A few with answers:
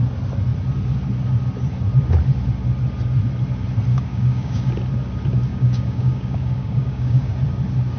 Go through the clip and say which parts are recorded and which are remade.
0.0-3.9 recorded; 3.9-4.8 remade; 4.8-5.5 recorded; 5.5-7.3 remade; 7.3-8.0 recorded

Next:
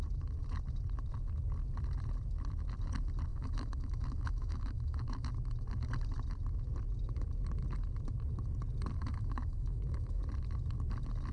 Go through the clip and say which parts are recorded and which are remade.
0.0-3.3 recorded; 3.3-5.3 remade; 5.3-9.0 recorded; 9.0-10.2 remade; 10.2-11.3 recorded

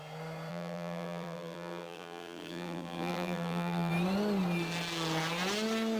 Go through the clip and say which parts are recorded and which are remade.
0.0-0.5 recorded; 0.5-3.9 remade; 3.9-6.0 recorded

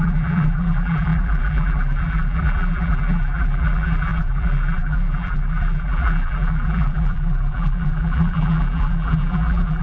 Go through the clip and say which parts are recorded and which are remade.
0.0-9.8 remade

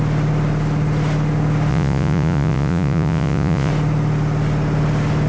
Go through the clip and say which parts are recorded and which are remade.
0.0-1.7 recorded; 1.7-3.7 remade; 3.7-5.3 recorded

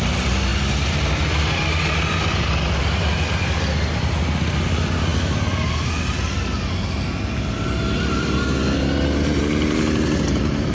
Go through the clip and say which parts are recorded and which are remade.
0.0-10.7 recorded